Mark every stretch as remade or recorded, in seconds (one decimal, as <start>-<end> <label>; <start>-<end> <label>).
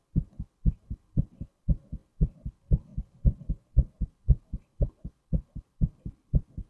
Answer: 0.0-6.7 recorded